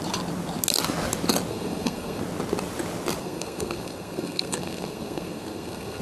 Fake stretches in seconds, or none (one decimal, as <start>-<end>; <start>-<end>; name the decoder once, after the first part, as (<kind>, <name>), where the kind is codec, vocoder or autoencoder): 1.5-2.2 (codec, SNAC); 3.2-6.0